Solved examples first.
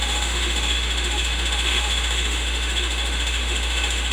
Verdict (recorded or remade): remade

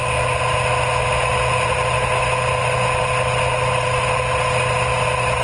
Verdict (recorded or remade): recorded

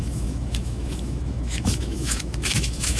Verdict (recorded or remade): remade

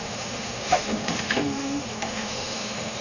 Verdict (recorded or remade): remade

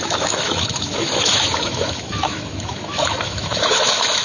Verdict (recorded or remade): remade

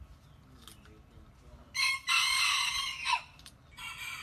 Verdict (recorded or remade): recorded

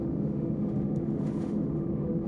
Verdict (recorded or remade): remade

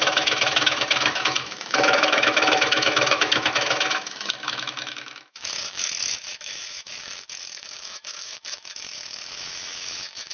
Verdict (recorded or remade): remade